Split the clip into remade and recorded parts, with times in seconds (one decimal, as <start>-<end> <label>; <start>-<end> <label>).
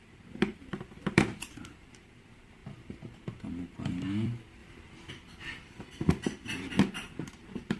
0.0-2.6 remade; 2.6-3.7 recorded; 3.7-7.8 remade